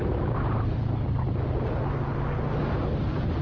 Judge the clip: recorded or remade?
recorded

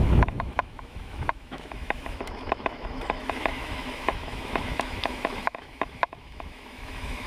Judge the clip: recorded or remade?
remade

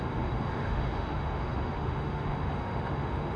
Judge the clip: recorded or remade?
remade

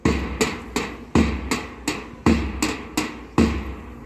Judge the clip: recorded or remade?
recorded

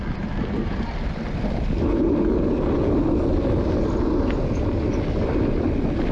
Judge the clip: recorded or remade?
recorded